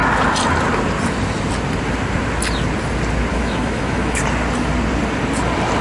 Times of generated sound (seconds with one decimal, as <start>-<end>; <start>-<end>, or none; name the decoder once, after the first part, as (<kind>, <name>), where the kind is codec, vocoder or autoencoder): 3.3-4.2 (autoencoder, DAC-VAE)

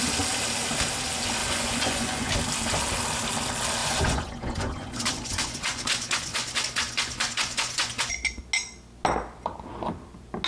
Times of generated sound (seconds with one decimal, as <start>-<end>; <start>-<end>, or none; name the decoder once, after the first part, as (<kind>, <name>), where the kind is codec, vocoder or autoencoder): 1.4-2.3 (vocoder, Vocos); 3.8-8.4

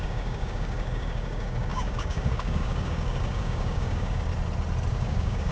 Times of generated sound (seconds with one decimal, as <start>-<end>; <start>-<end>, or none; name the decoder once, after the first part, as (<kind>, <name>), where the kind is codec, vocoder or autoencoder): 0.0-4.3 (codec, DAC); 4.9-5.5

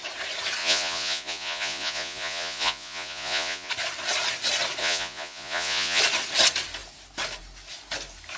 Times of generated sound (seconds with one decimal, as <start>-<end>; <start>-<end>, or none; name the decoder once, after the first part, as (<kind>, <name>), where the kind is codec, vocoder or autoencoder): 0.6-3.7 (vocoder, Vocos); 4.8-6.0

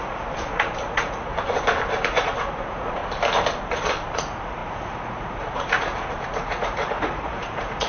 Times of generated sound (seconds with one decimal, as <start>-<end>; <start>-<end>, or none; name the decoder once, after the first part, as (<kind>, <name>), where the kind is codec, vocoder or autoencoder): 0.0-1.3 (vocoder, Vocos); 2.1-3.0; 4.1-7.9

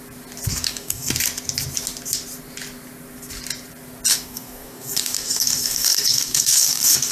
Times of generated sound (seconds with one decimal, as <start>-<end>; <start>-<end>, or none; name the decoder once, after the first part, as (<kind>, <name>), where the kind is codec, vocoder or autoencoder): 0.5-1.1 (codec, DAC); 4.1-7.1

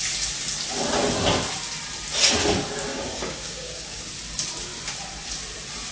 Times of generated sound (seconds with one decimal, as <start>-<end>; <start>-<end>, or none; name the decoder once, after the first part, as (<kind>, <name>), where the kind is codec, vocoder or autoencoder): 2.9-4.0 (codec, DAC)